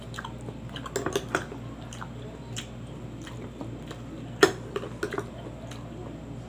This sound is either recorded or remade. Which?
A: recorded